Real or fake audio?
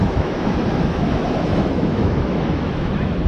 fake